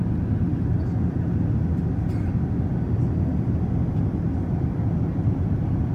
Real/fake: real